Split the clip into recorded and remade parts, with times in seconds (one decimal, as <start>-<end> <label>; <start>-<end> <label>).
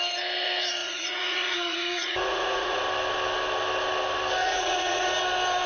0.0-0.8 recorded; 0.8-2.8 remade; 2.8-4.4 recorded; 4.4-5.1 remade; 5.1-5.7 recorded